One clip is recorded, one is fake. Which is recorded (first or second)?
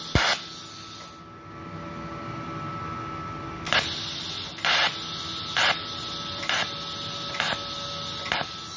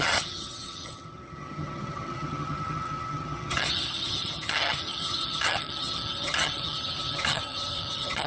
first